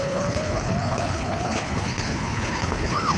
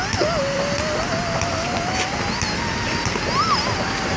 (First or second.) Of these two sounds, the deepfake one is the first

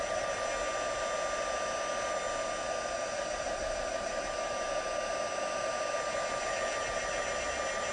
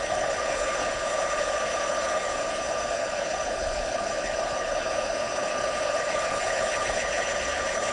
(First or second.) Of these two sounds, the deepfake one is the second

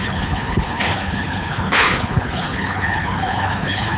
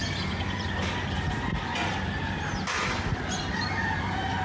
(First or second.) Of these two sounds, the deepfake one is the first